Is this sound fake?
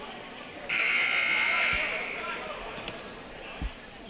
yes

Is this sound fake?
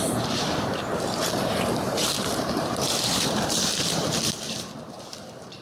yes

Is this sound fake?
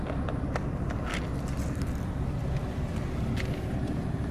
yes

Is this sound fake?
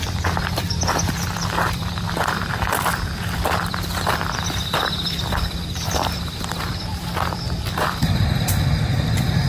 yes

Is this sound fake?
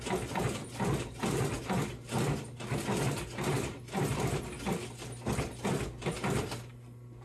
no